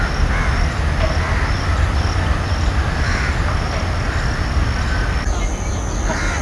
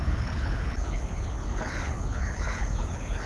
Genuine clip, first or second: first